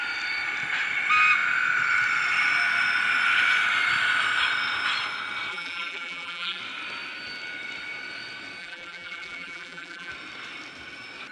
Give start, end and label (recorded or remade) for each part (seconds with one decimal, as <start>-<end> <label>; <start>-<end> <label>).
0.0-5.5 recorded; 5.5-6.6 remade; 6.6-8.6 recorded; 8.6-10.1 remade; 10.1-11.3 recorded